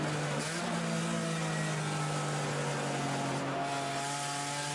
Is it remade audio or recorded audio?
recorded